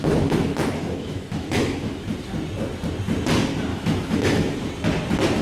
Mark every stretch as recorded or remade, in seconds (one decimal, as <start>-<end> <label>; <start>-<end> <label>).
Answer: 0.0-2.1 remade; 2.1-3.7 recorded; 3.7-4.7 remade; 4.7-5.4 recorded